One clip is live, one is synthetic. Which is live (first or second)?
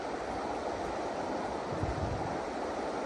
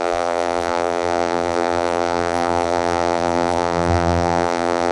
first